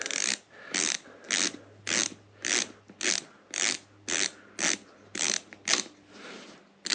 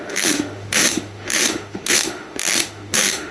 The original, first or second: first